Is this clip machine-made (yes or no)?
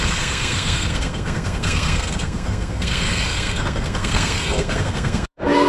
yes